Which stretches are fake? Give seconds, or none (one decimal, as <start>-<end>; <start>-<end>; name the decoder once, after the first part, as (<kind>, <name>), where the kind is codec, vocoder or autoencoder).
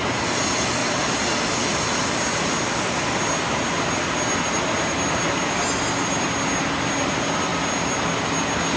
none